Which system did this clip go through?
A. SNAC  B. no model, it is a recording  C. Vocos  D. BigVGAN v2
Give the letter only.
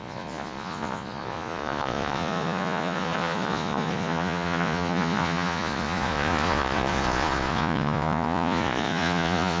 C